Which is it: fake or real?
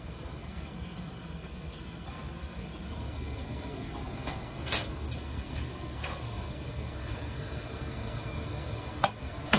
fake